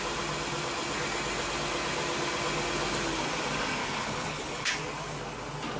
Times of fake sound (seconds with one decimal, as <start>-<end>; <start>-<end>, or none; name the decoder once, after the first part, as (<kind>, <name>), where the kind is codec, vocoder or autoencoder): 3.8-4.7 (codec, HILCodec)

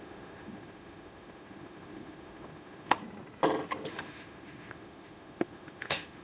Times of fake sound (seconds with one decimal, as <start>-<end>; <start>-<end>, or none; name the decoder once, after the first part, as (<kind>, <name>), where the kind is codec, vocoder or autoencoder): 0.0-3.0 (autoencoder, DAC-VAE); 3.9-6.2

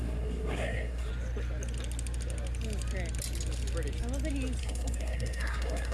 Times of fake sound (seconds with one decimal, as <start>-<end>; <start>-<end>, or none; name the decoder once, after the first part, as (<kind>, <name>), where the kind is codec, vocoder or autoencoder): 0.0-1.1 (codec, SNAC); 4.6-5.9

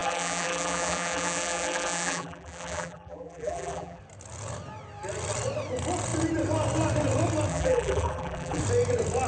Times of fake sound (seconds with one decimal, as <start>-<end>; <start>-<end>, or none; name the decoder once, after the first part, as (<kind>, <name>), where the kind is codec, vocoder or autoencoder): 0.0-4.0 (vocoder, BigVGAN v2); 7.5-8.6

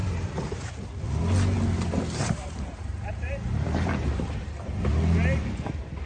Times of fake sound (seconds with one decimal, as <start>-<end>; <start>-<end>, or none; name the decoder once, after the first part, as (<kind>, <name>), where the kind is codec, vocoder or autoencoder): 0.0-0.7 (vocoder, BigVGAN v2); 2.2-4.3

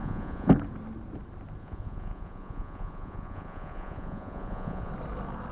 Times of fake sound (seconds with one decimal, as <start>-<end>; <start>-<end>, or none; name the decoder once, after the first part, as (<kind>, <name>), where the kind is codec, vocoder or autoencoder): 0.0-0.5 (vocoder, Vocos); 1.6-4.9

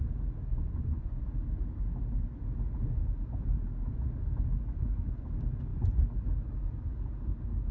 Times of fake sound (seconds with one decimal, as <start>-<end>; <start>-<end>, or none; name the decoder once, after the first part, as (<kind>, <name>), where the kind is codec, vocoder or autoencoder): 0.5-1.2 (vocoder, Vocos)

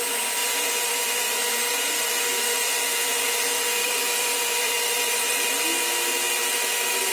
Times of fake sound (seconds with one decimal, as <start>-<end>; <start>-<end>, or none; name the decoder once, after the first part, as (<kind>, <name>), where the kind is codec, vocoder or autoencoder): 0.4-3.2 (vocoder, BigVGAN v2); 3.8-5.6